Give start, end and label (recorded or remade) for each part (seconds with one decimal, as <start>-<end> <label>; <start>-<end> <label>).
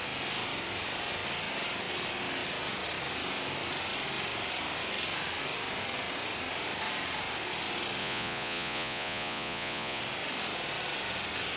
0.0-8.0 recorded; 8.0-10.0 remade; 10.0-11.6 recorded